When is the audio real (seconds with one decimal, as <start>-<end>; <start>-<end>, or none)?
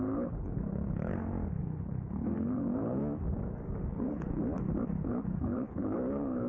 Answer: 1.1-1.6; 3.0-3.9; 4.4-5.0